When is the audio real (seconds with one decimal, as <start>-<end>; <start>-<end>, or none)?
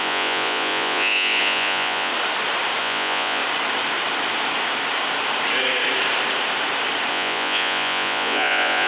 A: 2.1-2.8; 3.4-7.1